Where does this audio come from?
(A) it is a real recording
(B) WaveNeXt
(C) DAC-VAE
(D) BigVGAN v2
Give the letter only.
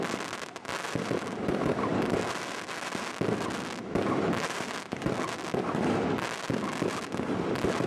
A